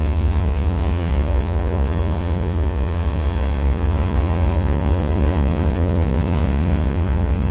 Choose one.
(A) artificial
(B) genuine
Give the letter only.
A